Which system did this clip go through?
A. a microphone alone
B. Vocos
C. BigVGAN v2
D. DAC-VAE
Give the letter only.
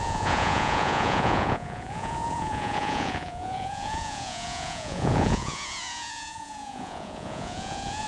B